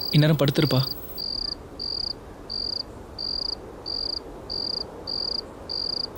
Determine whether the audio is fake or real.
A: real